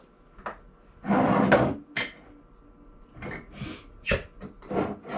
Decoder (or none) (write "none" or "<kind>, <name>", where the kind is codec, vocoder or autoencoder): none